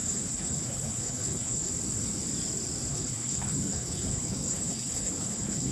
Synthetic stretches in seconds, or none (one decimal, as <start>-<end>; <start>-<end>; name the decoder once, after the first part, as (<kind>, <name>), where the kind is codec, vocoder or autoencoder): 0.0-1.7 (codec, HILCodec); 2.9-5.7